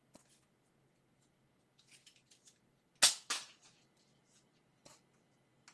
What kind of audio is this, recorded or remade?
recorded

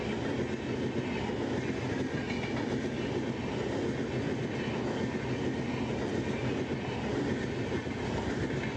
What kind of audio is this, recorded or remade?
recorded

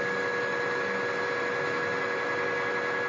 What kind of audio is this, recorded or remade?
recorded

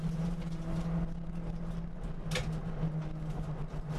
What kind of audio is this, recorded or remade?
recorded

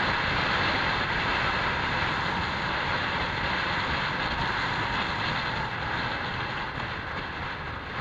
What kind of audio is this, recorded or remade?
recorded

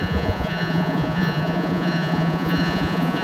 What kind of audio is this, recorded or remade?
remade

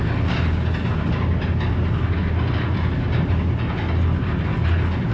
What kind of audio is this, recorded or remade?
recorded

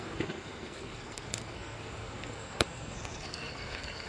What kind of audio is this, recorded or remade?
remade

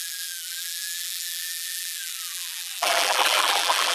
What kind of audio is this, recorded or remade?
remade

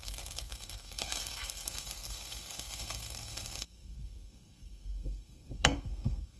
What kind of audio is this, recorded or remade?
remade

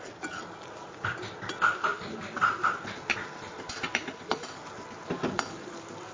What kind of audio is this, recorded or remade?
recorded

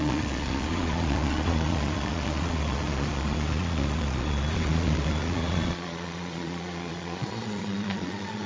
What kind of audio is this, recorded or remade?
remade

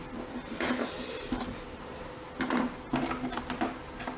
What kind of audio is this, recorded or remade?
recorded